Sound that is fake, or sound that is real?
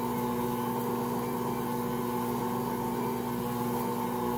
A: real